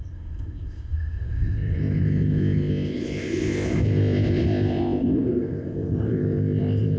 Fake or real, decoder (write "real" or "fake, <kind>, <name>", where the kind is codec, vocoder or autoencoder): fake, codec, ZipCodec